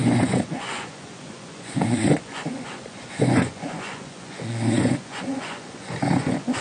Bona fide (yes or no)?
no